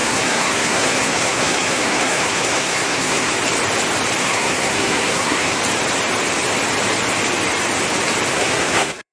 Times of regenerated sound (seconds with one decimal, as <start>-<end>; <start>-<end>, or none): 0.0-3.3; 4.2-5.6; 8.3-9.1